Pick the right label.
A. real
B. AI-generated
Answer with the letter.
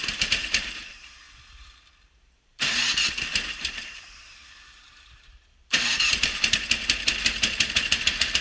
B